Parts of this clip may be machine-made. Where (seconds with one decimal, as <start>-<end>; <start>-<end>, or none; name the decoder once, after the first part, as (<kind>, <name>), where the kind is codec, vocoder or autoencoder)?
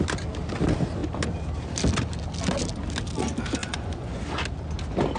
3.6-4.2 (vocoder, Vocos)